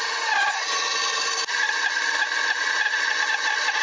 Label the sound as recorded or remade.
recorded